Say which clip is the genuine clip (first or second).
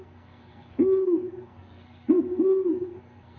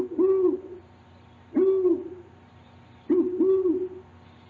second